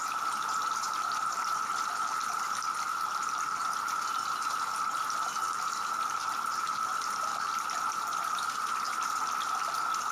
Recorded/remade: recorded